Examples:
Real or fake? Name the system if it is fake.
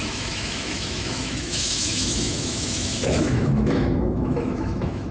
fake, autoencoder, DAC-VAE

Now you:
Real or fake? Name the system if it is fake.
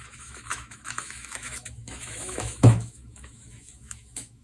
fake, autoencoder, DAC-VAE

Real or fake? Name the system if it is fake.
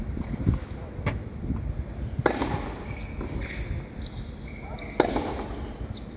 real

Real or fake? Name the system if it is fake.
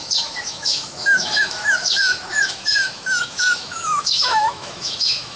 fake, autoencoder, DAC-VAE